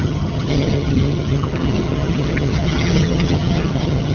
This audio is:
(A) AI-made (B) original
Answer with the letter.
A